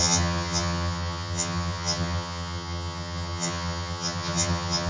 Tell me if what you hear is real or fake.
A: fake